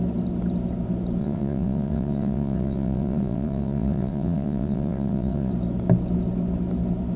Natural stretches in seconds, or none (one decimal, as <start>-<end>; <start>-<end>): 0.0-1.2; 5.5-7.2